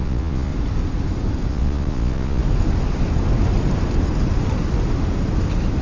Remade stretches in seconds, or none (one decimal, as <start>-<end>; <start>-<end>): 0.0-0.5; 1.5-2.4